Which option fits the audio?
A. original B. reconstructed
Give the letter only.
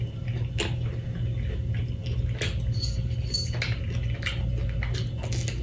A